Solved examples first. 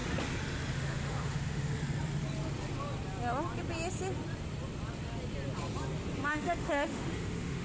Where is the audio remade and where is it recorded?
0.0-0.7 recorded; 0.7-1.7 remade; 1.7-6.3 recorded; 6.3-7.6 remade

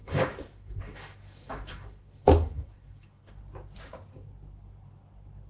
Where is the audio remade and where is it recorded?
0.0-3.3 remade; 3.3-5.5 recorded

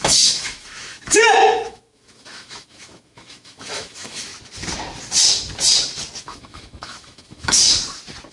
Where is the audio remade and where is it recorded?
0.0-4.3 remade; 4.3-6.2 recorded; 6.2-7.6 remade; 7.6-8.3 recorded

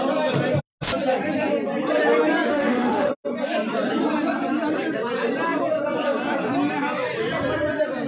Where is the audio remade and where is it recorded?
0.0-2.5 recorded; 2.5-3.1 remade; 3.1-8.1 recorded

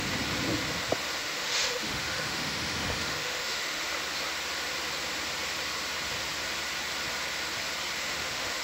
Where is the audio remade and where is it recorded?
0.0-1.2 recorded; 1.2-3.9 remade; 3.9-8.0 recorded; 8.0-8.6 remade